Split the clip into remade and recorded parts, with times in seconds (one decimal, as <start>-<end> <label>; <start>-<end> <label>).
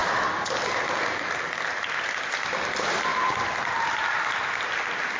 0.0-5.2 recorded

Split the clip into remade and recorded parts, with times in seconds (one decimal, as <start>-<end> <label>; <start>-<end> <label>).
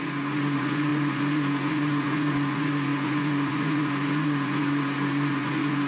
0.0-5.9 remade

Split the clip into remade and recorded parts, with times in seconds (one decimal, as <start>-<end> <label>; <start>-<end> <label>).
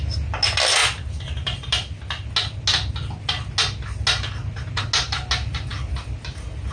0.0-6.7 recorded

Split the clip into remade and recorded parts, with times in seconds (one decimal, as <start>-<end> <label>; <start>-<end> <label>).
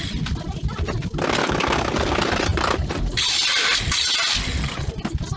0.0-1.4 recorded; 1.4-1.9 remade; 1.9-5.4 recorded